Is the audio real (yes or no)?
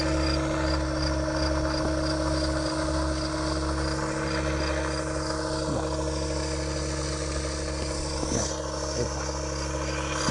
yes